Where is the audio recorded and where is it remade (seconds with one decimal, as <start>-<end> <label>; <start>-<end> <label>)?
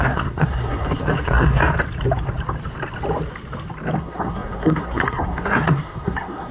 0.0-1.6 remade; 1.6-4.0 recorded; 4.0-6.5 remade